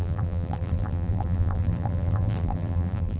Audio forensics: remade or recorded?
remade